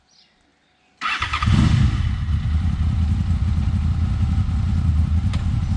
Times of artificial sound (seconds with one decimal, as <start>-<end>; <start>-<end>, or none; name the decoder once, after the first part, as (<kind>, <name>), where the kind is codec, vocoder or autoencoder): none